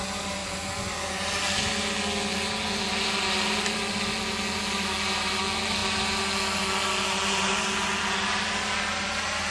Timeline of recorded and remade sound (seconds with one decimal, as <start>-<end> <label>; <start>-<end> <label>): 0.0-9.5 recorded